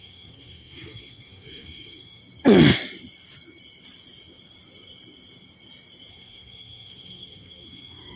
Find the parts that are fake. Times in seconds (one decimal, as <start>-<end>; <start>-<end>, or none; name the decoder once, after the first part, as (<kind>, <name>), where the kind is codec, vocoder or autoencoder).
0.0-2.2 (codec, SNAC); 6.1-8.2